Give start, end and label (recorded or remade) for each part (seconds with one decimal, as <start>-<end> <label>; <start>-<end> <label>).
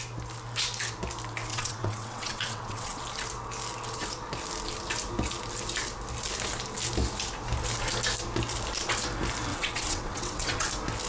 0.0-1.5 recorded; 1.5-3.0 remade; 3.0-9.5 recorded; 9.5-10.7 remade; 10.7-11.1 recorded